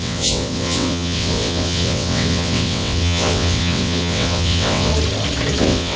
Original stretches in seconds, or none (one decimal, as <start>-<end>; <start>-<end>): 4.9-5.6